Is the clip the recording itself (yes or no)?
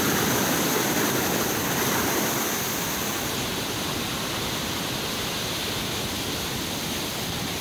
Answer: yes